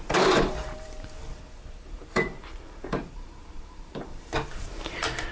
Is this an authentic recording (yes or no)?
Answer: no